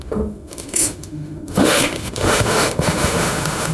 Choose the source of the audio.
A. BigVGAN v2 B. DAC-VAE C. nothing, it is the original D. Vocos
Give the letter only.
B